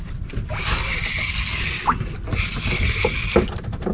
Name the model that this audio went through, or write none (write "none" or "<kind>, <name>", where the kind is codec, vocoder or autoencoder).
none